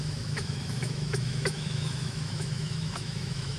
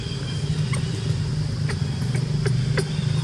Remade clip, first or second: first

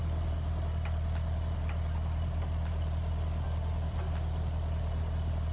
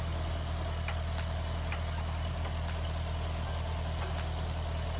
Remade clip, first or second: first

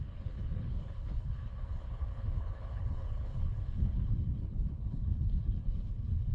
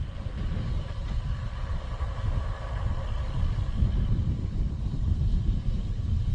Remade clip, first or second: first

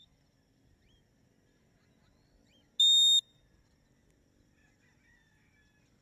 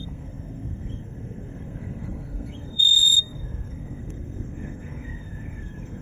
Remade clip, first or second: second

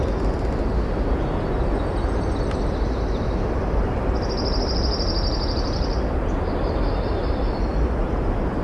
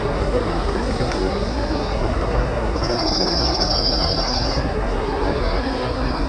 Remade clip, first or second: second